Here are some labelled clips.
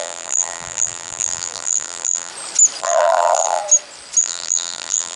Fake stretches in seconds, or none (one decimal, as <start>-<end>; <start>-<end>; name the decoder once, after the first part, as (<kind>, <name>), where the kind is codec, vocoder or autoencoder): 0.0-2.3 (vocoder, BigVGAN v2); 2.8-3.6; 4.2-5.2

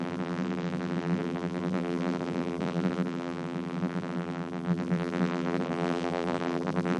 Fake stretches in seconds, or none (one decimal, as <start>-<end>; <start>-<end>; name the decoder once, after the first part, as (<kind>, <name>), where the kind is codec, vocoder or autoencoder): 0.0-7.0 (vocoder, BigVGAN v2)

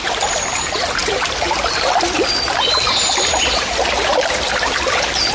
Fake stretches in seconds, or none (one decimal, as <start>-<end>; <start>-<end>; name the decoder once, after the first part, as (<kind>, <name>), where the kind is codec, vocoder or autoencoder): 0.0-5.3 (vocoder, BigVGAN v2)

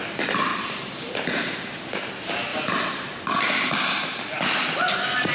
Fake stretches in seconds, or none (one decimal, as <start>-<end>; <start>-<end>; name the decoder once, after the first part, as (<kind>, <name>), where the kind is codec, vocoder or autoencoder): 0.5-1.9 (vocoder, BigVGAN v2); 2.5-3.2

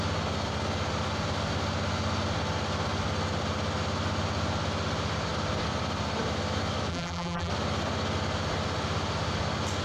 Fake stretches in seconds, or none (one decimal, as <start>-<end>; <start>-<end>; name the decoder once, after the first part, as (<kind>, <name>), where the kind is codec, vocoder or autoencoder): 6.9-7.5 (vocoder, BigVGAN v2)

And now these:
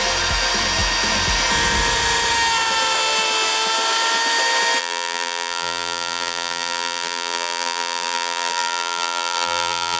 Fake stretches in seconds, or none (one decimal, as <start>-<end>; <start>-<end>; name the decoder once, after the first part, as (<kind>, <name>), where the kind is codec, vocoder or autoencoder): 4.8-10.0 (vocoder, BigVGAN v2)

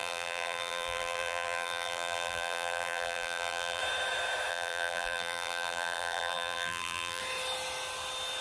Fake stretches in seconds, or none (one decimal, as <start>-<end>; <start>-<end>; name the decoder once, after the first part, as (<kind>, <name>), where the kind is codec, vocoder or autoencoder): 0.0-3.8 (vocoder, BigVGAN v2); 4.5-7.2